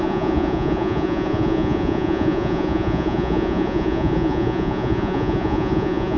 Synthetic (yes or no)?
yes